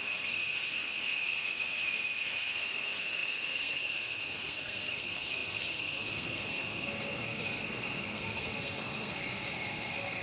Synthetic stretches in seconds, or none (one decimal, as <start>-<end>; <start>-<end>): 0.0-10.2